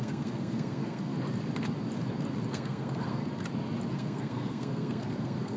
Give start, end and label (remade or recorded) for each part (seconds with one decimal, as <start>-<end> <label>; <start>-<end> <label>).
0.0-1.1 remade; 1.1-2.5 recorded; 2.5-3.2 remade; 3.2-3.9 recorded; 3.9-5.6 remade